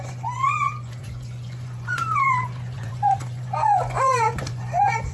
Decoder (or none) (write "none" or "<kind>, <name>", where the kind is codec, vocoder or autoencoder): vocoder, Vocos